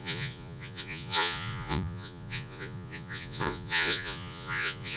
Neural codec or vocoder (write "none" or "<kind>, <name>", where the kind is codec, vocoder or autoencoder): vocoder, Vocos